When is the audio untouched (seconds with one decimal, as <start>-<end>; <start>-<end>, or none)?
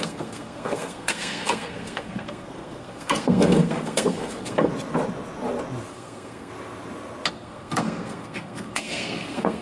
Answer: 4.7-5.9; 6.5-7.3